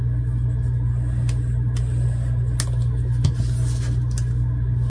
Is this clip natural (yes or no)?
yes